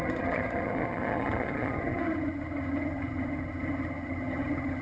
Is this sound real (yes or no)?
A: no